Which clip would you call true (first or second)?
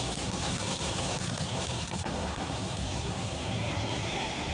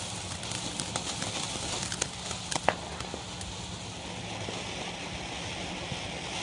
second